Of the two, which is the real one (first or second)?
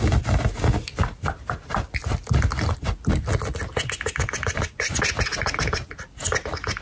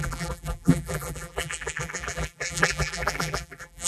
first